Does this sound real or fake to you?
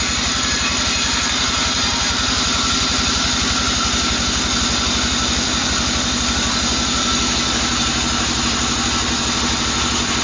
real